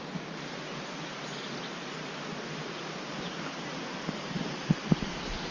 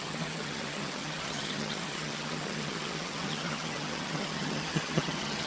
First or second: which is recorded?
first